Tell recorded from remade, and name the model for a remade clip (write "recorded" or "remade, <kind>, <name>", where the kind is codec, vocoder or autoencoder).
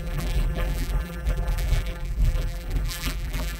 remade, vocoder, BigVGAN v2